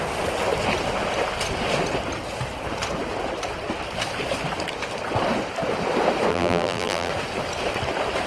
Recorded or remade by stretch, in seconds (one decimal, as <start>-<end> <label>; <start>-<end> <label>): 0.0-6.3 recorded; 6.3-7.1 remade; 7.1-8.3 recorded